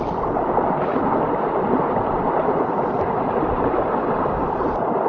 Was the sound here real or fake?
real